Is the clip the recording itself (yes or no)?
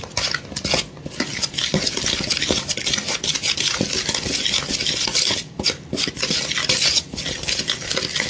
yes